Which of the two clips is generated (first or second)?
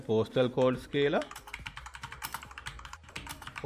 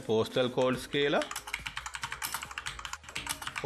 first